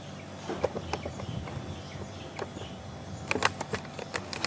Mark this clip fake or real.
real